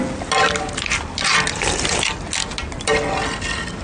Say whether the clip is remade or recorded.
recorded